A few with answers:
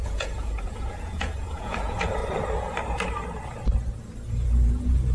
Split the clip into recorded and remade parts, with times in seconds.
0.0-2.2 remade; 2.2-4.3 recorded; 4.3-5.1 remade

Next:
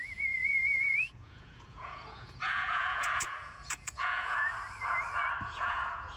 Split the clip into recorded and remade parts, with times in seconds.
0.0-4.5 remade; 4.5-5.4 recorded; 5.4-6.2 remade

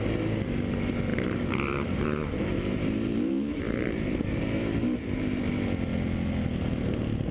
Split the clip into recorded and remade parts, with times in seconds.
0.0-1.1 recorded; 1.1-5.4 remade; 5.4-7.3 recorded

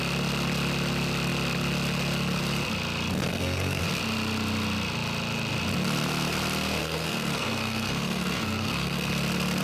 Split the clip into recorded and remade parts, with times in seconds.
0.0-3.3 recorded; 3.3-3.8 remade; 3.8-6.8 recorded; 6.8-9.1 remade; 9.1-9.6 recorded

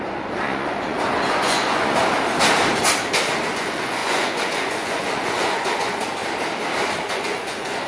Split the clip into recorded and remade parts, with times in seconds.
0.0-2.0 remade; 2.0-3.5 recorded; 3.5-6.2 remade; 6.2-7.1 recorded; 7.1-7.9 remade